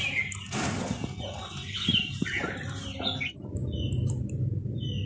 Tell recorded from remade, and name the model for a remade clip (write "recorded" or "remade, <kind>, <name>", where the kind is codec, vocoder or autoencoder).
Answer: recorded